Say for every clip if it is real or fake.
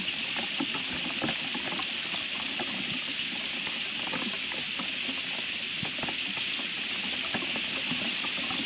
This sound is real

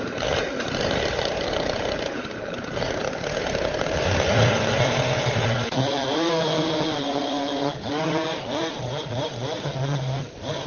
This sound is fake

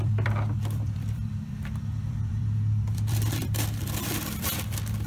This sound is fake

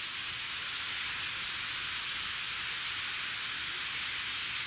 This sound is real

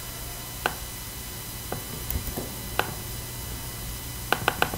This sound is real